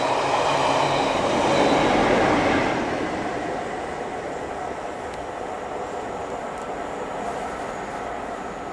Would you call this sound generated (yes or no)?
no